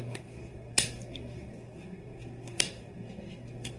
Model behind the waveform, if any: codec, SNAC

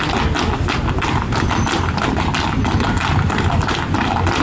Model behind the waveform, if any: none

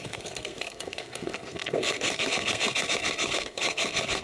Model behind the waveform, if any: codec, SNAC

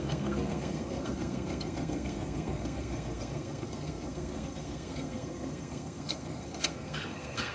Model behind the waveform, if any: codec, SNAC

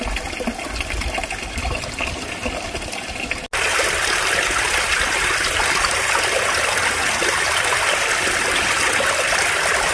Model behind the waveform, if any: none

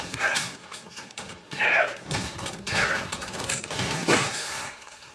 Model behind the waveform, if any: codec, SNAC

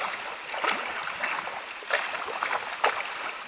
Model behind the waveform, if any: none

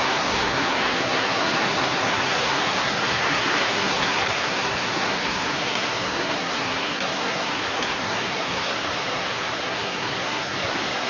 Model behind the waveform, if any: codec, SNAC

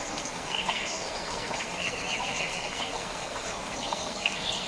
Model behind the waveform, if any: codec, SNAC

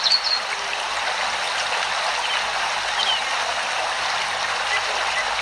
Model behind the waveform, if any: none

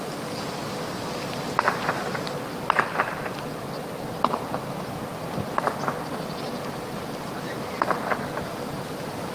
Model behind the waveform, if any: none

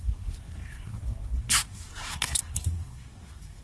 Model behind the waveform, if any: codec, SNAC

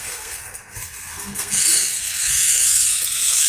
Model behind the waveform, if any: codec, SNAC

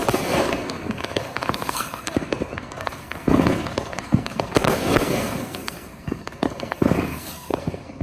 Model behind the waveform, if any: codec, SNAC